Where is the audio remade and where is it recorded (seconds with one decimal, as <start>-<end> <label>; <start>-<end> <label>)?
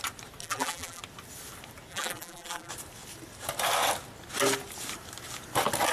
0.0-0.4 recorded; 0.4-1.0 remade; 1.0-1.9 recorded; 1.9-2.7 remade; 2.7-5.9 recorded